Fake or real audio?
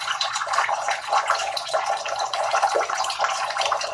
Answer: fake